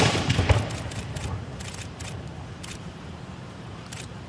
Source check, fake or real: fake